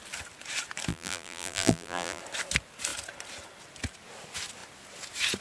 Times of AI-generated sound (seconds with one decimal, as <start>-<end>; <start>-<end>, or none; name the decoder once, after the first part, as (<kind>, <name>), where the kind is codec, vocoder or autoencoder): 0.9-2.2 (vocoder, BigVGAN v2)